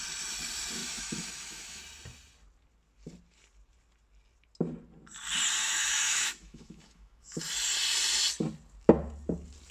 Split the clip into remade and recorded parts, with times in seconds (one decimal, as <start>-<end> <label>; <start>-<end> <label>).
0.0-0.8 recorded; 0.8-1.8 remade; 1.8-5.6 recorded; 5.6-7.4 remade; 7.4-9.7 recorded